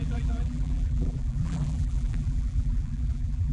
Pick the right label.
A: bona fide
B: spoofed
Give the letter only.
B